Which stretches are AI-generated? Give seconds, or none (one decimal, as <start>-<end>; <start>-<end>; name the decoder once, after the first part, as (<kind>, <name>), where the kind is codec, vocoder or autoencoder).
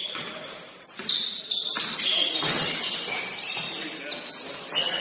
none